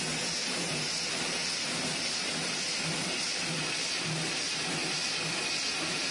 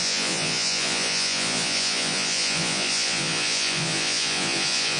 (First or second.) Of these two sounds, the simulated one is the second